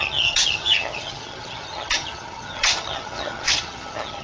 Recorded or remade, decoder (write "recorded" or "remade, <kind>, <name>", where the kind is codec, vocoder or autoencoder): remade, vocoder, HiFi-GAN